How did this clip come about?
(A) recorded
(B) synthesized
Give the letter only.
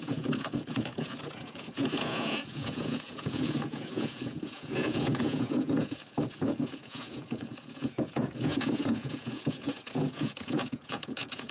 B